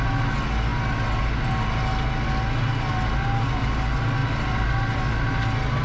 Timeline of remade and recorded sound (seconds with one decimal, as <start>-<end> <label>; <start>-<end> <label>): 0.0-5.8 recorded